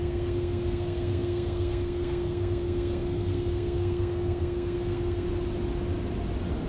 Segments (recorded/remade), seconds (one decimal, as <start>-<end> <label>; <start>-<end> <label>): 0.0-5.3 remade; 5.3-6.7 recorded